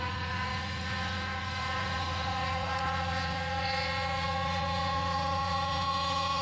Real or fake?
fake